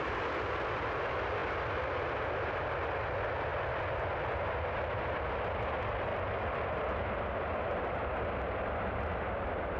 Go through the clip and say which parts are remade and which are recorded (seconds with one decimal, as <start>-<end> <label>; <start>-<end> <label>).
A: 0.0-6.1 recorded; 6.1-6.9 remade; 6.9-9.8 recorded